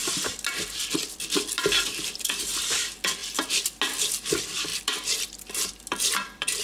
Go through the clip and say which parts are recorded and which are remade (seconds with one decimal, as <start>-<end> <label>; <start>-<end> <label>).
0.0-3.2 remade; 3.2-4.1 recorded; 4.1-6.6 remade